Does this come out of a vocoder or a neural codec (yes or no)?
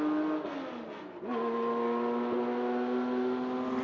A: no